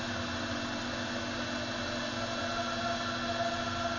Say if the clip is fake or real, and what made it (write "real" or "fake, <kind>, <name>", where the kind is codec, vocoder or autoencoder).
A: real